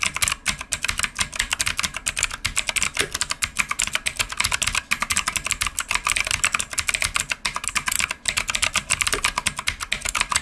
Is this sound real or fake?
real